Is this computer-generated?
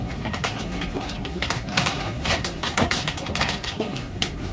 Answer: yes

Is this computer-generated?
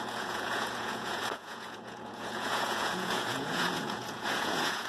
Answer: yes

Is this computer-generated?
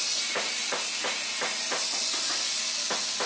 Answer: no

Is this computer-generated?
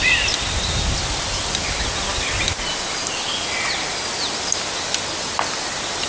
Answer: no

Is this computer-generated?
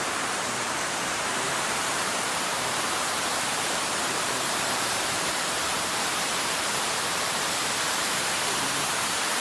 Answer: yes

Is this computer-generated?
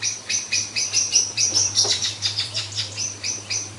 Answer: yes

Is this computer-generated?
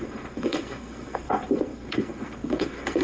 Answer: yes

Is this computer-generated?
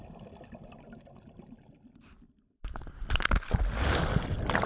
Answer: no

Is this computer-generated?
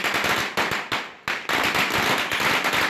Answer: no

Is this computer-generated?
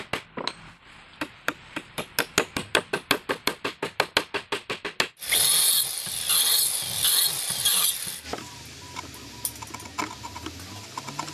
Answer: no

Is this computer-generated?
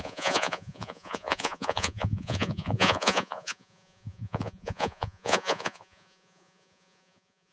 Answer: yes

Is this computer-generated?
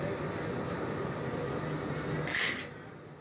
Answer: no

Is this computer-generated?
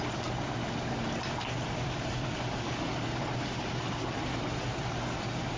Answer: no